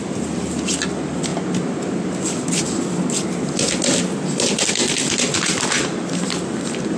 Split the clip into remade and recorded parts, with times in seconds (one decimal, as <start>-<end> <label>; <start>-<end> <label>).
0.0-7.0 recorded